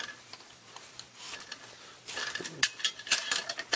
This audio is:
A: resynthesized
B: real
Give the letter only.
A